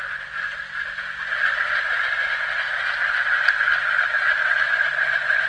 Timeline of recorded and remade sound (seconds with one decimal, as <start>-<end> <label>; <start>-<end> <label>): 0.0-5.5 recorded